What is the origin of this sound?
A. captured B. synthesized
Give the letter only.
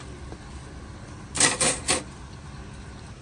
A